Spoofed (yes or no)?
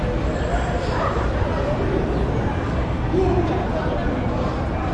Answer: no